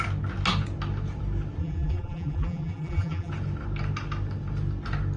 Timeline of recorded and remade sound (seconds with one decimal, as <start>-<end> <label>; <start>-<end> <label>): 0.0-1.6 recorded; 1.6-3.3 remade; 3.3-5.2 recorded